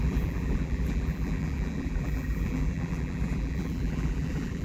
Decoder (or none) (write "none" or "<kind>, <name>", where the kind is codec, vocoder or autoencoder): vocoder, BigVGAN v2